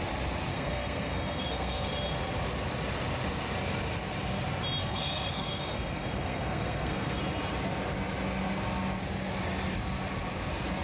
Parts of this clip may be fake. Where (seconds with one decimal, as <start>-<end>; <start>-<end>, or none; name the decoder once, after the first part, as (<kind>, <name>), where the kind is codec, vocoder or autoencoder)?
0.5-1.9 (codec, SNAC); 4.8-7.2